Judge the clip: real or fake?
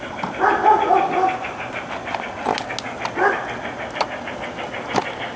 real